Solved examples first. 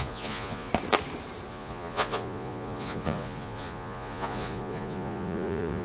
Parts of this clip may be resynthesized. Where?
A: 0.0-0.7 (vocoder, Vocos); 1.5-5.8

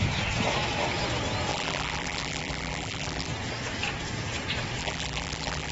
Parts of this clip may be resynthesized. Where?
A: 1.5-3.3 (vocoder, BigVGAN v2); 4.8-5.7

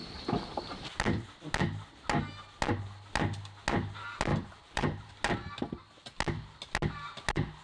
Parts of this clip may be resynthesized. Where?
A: 0.0-1.0 (vocoder, BigVGAN v2); 4.3-5.1

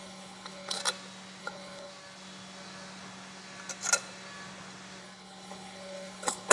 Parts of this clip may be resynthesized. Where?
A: 0.0-0.8 (codec, HILCodec); 1.4-1.9; 5.0-6.5

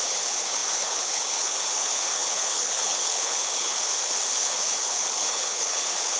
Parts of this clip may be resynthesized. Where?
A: 0.0-6.2 (codec, HILCodec)